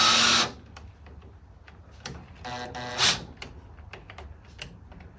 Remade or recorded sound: recorded